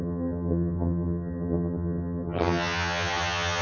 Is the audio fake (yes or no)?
yes